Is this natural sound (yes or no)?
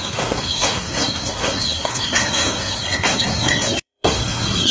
no